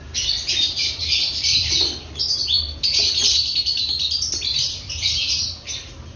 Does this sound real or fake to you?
fake